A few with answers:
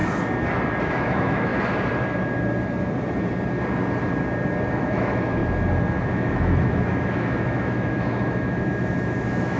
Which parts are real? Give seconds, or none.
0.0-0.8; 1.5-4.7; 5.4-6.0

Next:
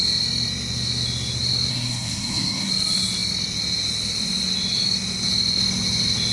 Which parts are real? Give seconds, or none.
0.0-1.7; 2.7-6.3

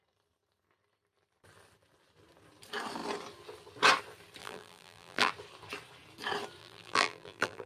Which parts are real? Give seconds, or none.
0.0-4.4; 5.3-6.6